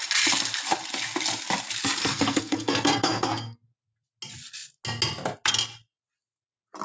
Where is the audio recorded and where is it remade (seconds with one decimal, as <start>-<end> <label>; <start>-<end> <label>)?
0.0-2.0 recorded; 2.0-3.7 remade; 3.7-6.8 recorded